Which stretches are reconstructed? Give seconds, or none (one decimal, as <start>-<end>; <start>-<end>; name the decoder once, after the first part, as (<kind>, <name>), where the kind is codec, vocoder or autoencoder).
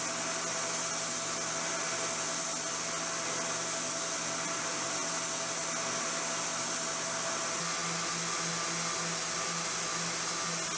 none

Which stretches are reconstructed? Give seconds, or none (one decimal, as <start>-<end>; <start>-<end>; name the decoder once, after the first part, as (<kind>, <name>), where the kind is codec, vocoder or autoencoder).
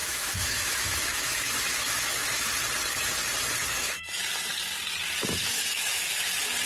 0.0-2.5 (autoencoder, DAC-VAE); 3.6-4.2; 5.4-6.3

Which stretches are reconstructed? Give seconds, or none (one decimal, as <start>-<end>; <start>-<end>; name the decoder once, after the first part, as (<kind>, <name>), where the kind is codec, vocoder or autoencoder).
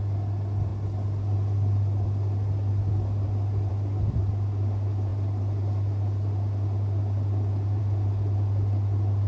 none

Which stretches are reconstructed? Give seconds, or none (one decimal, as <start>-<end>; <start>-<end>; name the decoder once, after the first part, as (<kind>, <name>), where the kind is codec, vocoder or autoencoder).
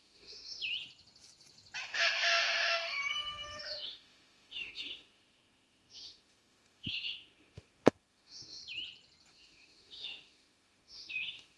0.0-0.6 (autoencoder, DAC-VAE); 1.8-3.0; 3.6-8.6; 9.3-11.6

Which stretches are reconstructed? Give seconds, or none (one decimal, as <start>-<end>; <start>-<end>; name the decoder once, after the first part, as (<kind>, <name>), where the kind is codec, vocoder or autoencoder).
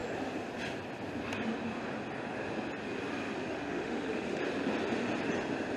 3.5-4.4 (autoencoder, DAC-VAE)